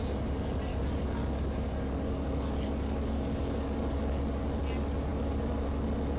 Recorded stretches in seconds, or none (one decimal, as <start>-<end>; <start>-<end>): 0.0-0.7; 4.4-6.2